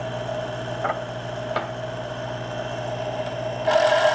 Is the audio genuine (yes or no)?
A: yes